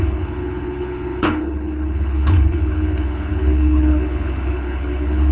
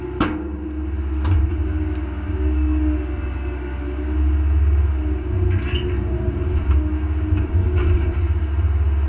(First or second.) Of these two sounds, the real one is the second